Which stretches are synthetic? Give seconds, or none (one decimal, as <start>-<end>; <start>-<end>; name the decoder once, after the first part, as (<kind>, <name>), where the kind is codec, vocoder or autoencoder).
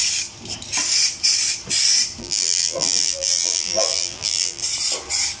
2.2-4.6 (vocoder, BigVGAN v2)